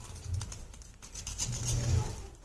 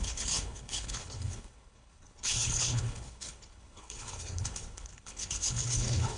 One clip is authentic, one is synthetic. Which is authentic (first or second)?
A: first